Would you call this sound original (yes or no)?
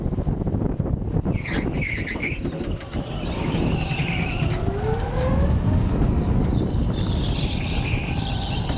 yes